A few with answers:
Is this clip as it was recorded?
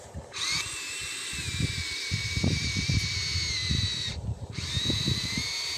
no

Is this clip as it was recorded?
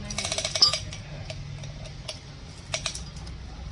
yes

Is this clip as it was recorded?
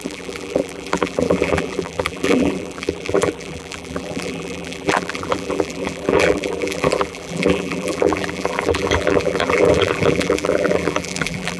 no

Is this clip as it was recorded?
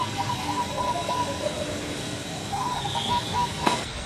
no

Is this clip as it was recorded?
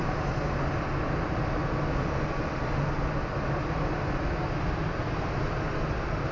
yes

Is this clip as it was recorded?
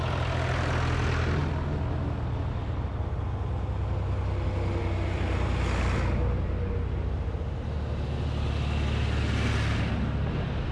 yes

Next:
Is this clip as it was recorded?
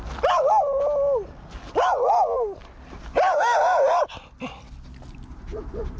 yes